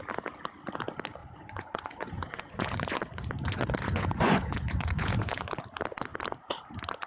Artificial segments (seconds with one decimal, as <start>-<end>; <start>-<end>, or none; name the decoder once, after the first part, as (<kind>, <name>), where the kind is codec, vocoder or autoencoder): 1.2-5.5 (vocoder, Vocos)